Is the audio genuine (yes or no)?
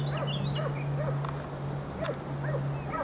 yes